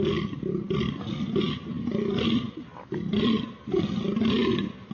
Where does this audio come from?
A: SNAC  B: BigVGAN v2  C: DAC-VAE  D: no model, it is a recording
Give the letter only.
D